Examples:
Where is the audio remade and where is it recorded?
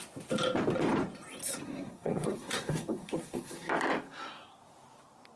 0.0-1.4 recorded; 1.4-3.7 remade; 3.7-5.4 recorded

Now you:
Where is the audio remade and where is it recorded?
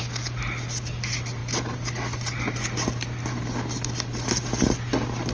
0.0-5.3 recorded